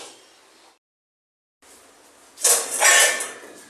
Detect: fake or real real